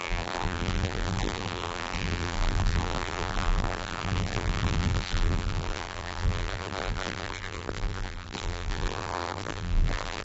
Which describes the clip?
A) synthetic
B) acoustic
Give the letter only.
A